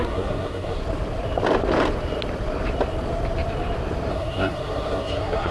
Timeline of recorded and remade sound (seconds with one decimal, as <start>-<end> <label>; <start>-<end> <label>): 0.0-0.8 remade; 0.8-4.1 recorded; 4.1-5.5 remade